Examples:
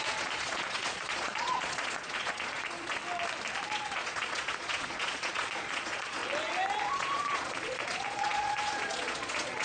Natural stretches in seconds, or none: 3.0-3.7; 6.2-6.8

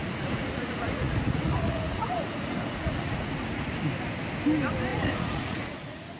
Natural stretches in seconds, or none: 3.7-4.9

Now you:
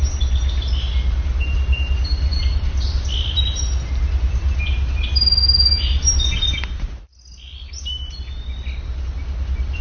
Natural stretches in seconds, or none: 0.0-9.8

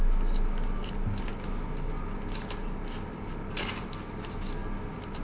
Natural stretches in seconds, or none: 0.0-5.2

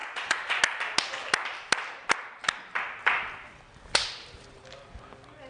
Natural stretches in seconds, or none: 0.6-5.5